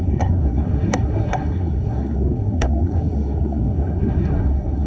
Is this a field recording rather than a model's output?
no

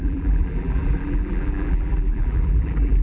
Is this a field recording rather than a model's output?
no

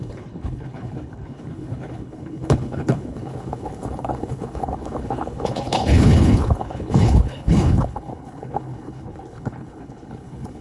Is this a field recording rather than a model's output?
no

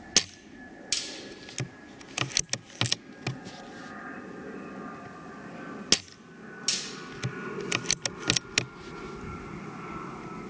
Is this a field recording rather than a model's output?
yes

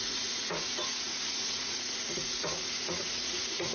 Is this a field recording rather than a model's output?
no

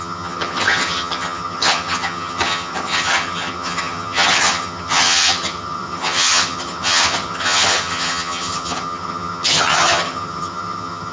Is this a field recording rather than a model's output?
no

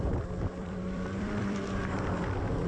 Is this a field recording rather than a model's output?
no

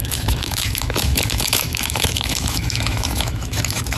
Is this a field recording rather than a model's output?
no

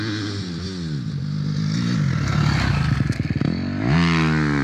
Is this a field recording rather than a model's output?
yes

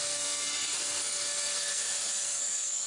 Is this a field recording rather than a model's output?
no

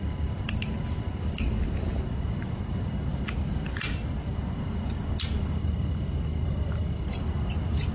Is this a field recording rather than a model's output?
yes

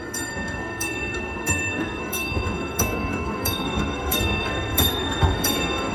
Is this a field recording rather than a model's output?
no